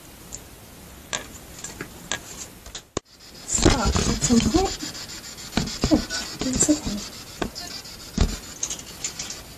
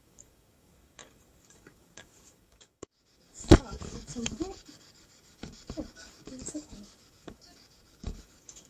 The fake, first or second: second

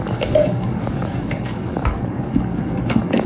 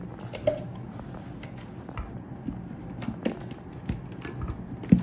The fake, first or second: first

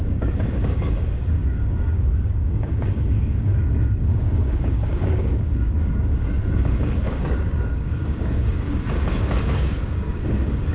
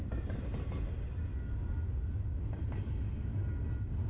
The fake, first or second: first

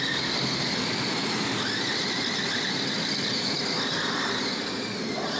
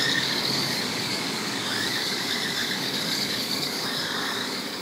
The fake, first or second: second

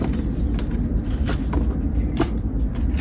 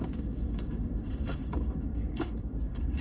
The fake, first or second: second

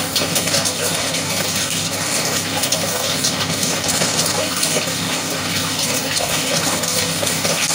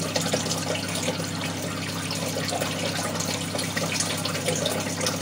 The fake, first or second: first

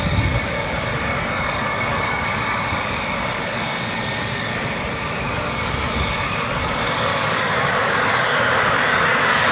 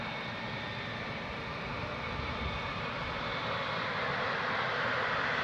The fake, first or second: first